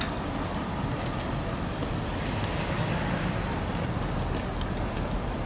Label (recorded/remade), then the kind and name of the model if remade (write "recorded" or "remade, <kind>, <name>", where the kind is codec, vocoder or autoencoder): recorded